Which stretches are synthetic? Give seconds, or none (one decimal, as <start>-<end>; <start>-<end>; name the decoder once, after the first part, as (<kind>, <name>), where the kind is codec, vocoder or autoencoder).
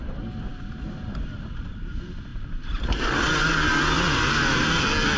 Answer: none